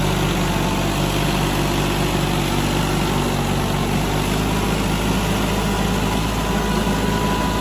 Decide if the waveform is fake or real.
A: real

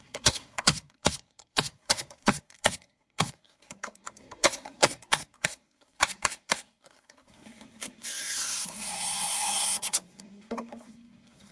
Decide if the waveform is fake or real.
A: fake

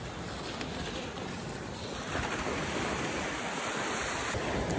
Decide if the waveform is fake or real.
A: real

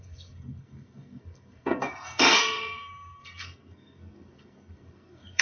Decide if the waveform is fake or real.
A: fake